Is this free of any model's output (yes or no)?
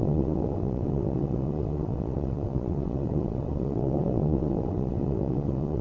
no